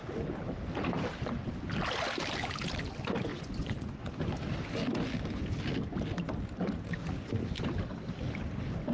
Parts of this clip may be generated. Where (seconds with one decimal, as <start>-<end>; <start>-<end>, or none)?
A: 3.3-4.1